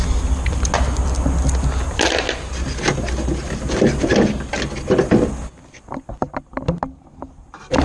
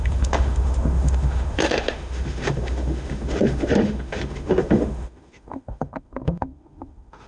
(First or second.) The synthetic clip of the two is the second